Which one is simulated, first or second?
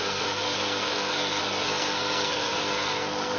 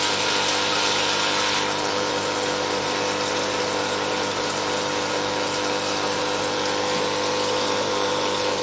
first